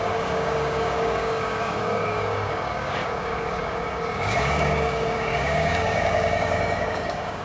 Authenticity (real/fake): fake